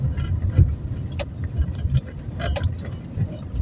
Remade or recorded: remade